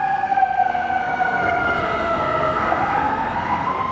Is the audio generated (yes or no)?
yes